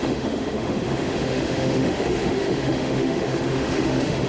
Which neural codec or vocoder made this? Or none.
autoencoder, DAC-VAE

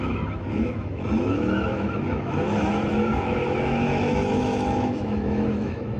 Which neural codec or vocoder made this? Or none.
autoencoder, DAC-VAE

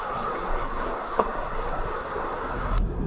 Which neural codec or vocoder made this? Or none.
codec, SNAC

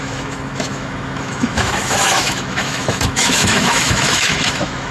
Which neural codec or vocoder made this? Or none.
autoencoder, DAC-VAE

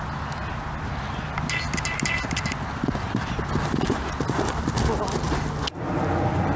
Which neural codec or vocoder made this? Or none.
none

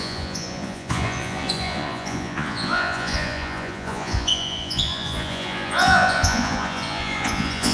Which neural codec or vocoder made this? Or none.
vocoder, Vocos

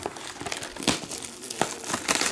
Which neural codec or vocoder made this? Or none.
none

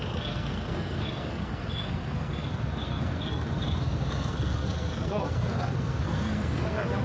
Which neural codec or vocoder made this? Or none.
codec, SNAC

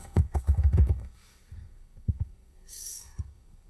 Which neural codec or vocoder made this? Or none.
codec, SNAC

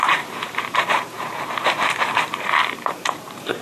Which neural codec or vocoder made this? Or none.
vocoder, BigVGAN v2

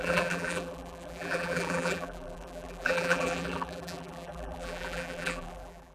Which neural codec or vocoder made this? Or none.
vocoder, BigVGAN v2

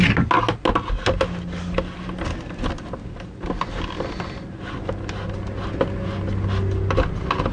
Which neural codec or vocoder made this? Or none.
none